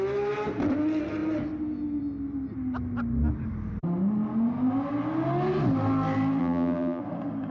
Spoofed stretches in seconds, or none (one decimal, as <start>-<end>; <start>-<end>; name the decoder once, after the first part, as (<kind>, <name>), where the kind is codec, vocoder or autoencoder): 6.4-7.0 (vocoder, BigVGAN v2)